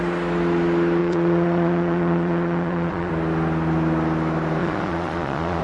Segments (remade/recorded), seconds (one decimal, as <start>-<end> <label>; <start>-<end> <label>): 0.0-1.0 recorded; 1.0-3.1 remade; 3.1-4.6 recorded; 4.6-5.6 remade